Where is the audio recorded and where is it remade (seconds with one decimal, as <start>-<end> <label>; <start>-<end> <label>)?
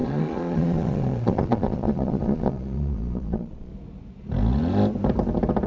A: 0.0-3.7 remade; 3.7-5.7 recorded